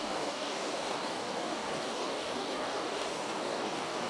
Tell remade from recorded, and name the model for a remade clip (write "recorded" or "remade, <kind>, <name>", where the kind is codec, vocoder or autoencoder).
remade, codec, DAC